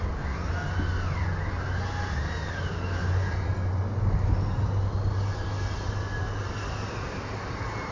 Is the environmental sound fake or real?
real